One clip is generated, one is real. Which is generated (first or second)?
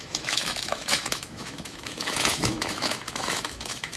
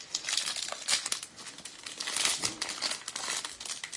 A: first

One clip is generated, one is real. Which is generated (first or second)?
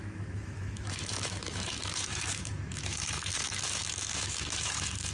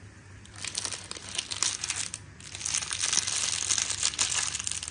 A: first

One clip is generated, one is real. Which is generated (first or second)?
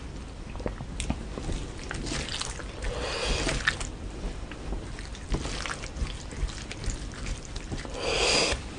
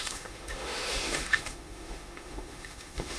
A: second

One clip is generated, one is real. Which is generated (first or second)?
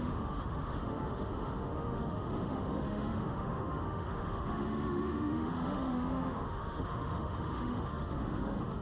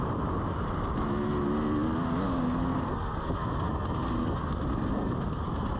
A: first